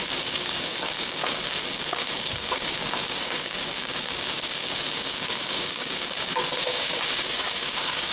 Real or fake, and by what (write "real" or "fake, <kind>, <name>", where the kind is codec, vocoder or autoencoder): fake, codec, DAC